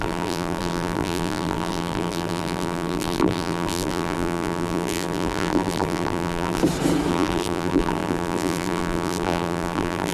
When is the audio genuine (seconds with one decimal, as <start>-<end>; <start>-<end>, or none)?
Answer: 6.6-7.1